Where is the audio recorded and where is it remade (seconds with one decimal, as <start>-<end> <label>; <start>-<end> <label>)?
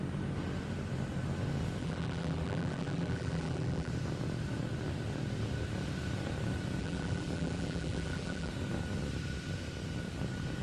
0.0-1.8 recorded; 1.8-3.9 remade; 3.9-6.8 recorded; 6.8-8.5 remade; 8.5-10.6 recorded